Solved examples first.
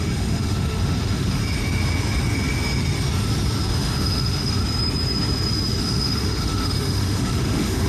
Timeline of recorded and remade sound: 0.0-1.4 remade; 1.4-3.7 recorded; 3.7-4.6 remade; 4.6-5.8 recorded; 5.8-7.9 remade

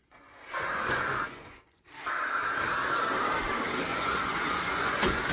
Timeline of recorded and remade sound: 0.0-1.8 remade; 1.8-3.9 recorded; 3.9-5.3 remade

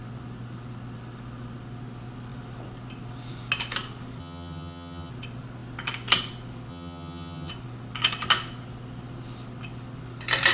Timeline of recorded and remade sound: 0.0-4.2 recorded; 4.2-5.1 remade; 5.1-6.7 recorded; 6.7-7.5 remade; 7.5-10.5 recorded

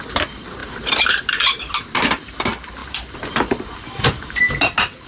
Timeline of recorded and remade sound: 0.0-0.6 recorded; 0.6-2.4 remade; 2.4-2.8 recorded; 2.8-4.4 remade; 4.4-5.1 recorded

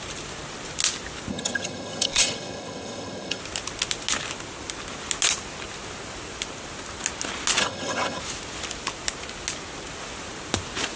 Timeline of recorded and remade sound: 0.0-1.3 recorded; 1.3-3.4 remade; 3.4-7.6 recorded; 7.6-8.2 remade; 8.2-11.0 recorded

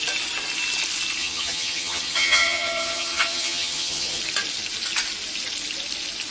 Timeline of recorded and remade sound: 0.0-1.2 recorded; 1.2-4.2 remade; 4.2-6.3 recorded